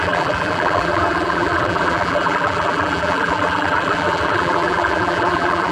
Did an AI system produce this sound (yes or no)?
yes